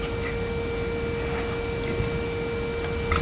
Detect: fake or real real